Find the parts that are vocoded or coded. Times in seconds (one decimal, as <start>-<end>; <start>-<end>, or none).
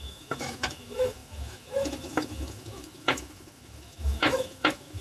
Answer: 0.0-5.0